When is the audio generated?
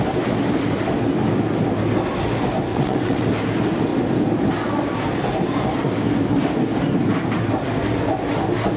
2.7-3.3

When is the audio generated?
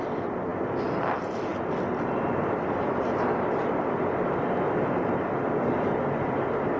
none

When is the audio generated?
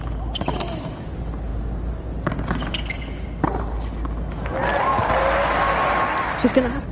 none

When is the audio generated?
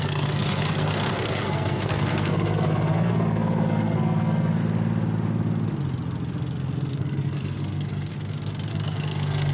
0.0-4.6; 6.9-8.1; 8.7-9.5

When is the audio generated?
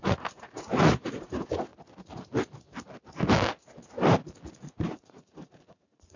0.0-1.7; 4.6-6.2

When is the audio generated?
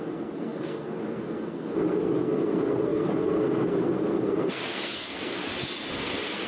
0.0-5.4; 5.9-6.5